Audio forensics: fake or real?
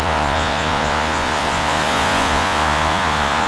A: fake